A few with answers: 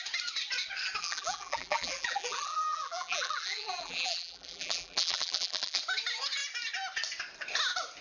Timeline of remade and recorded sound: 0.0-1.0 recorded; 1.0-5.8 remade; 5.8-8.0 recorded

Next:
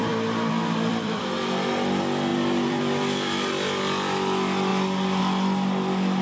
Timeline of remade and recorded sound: 0.0-1.2 remade; 1.2-2.3 recorded; 2.3-3.5 remade; 3.5-6.2 recorded

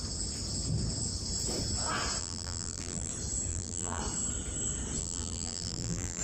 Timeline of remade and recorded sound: 0.0-2.2 recorded; 2.2-3.1 remade; 3.1-3.5 recorded; 3.5-4.0 remade; 4.0-5.0 recorded; 5.0-6.2 remade

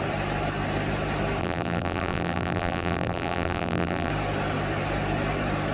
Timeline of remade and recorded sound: 0.0-1.4 recorded; 1.4-4.1 remade; 4.1-5.7 recorded

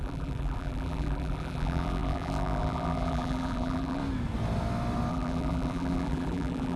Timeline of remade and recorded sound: 0.0-4.0 remade; 4.0-5.1 recorded; 5.1-6.8 remade

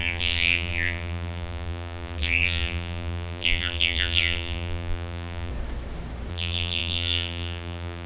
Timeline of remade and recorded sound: 0.0-5.5 remade; 5.5-6.3 recorded; 6.3-8.1 remade

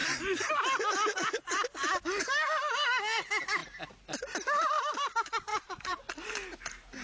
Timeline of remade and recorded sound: 0.0-0.5 remade; 0.5-5.5 recorded; 5.5-6.0 remade; 6.0-7.0 recorded